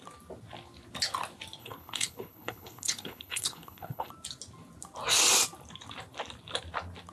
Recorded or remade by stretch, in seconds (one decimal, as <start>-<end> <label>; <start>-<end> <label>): 0.0-1.6 recorded; 1.6-4.1 remade; 4.1-7.1 recorded